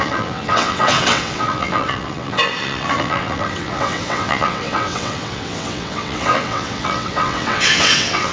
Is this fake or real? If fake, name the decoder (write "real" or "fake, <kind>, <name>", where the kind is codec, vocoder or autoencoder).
fake, vocoder, WaveNeXt